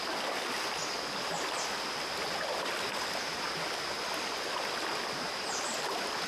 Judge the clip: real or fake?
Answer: real